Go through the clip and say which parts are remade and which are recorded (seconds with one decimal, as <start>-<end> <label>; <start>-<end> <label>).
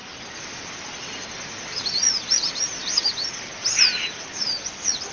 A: 0.0-0.6 remade; 0.6-2.8 recorded; 2.8-3.8 remade; 3.8-5.1 recorded